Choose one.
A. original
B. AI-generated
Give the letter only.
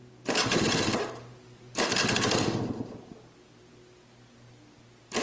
A